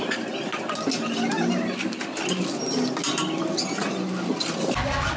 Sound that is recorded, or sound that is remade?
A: recorded